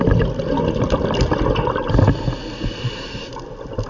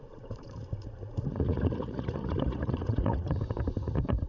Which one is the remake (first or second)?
second